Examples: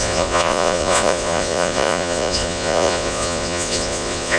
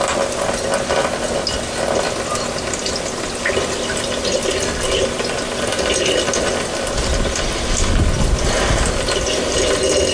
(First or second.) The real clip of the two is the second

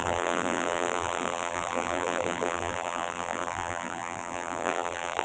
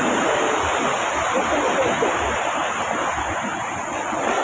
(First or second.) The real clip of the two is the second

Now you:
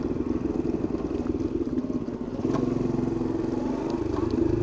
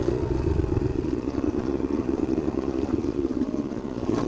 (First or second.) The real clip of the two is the first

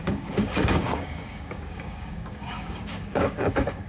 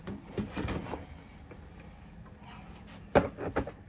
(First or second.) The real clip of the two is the second